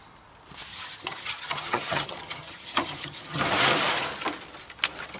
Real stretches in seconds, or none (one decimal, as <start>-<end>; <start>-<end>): 0.0-0.7; 3.4-5.2